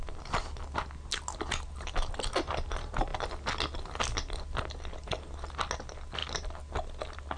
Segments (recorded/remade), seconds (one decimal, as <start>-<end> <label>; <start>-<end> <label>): 0.0-7.4 recorded